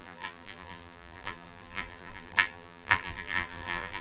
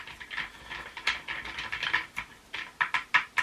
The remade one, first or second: first